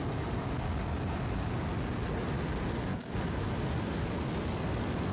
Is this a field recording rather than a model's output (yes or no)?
yes